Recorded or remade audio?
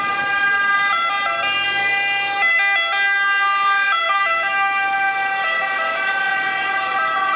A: recorded